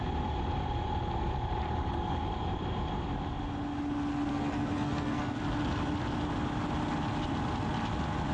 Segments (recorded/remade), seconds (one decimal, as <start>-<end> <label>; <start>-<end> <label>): 0.0-4.3 recorded; 4.3-5.4 remade; 5.4-8.3 recorded